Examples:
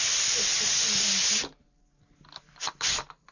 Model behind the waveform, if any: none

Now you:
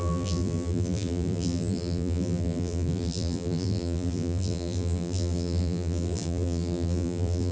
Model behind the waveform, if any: vocoder, BigVGAN v2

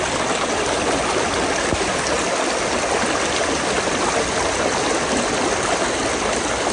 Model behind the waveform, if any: none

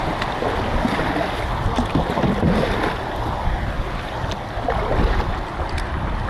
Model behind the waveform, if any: none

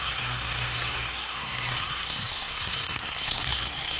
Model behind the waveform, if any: codec, SNAC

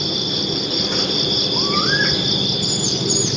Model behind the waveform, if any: none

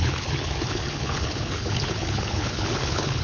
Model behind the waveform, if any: codec, HILCodec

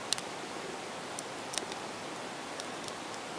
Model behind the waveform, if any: none